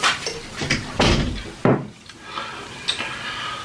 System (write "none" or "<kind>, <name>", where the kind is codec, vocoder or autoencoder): none